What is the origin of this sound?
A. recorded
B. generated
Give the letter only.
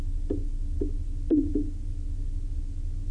A